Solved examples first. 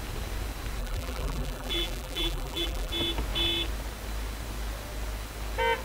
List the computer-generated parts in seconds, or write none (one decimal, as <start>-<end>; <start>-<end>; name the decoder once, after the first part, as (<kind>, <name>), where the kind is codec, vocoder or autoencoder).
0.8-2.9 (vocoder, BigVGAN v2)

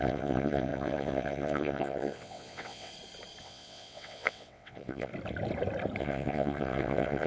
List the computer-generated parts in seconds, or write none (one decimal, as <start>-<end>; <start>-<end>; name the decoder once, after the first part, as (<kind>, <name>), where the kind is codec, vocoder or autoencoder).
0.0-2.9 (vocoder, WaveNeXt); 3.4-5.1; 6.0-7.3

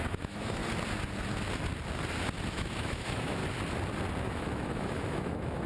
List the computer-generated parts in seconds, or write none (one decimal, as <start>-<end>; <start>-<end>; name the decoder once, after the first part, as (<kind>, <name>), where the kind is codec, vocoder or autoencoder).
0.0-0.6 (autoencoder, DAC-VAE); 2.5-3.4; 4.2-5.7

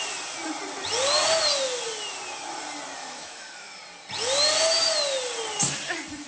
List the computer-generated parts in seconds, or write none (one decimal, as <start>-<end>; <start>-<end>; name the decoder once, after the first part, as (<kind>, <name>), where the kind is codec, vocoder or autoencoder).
3.0-3.8 (autoencoder, DAC-VAE)

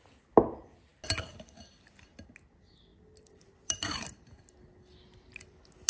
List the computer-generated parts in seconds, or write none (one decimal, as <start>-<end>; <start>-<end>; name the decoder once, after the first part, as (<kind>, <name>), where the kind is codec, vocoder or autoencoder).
none

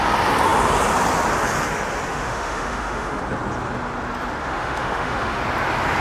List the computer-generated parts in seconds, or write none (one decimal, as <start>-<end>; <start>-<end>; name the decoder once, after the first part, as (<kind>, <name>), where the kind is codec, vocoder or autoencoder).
2.1-3.2 (autoencoder, DAC-VAE); 4.4-5.4